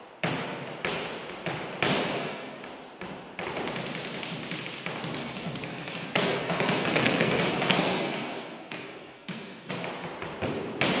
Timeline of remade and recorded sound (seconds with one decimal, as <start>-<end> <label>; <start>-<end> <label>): 0.0-2.0 recorded; 2.0-2.6 remade; 2.6-5.2 recorded; 5.2-9.7 remade; 9.7-11.0 recorded